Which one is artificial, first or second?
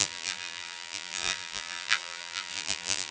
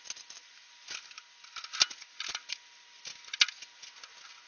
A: first